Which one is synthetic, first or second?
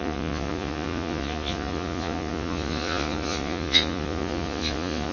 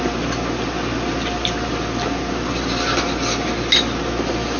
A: first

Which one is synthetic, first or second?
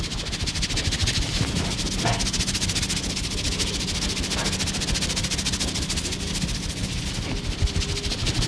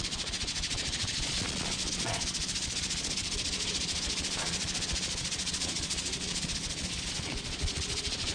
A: second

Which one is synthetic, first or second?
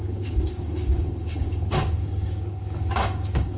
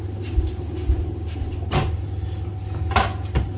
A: first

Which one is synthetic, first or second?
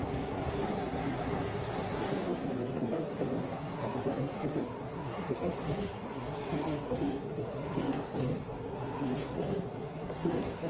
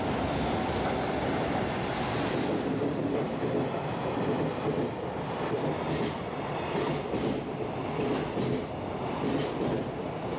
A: first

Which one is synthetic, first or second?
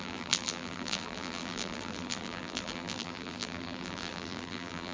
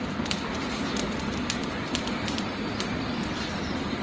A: first